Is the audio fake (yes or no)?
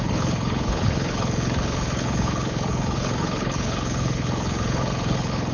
yes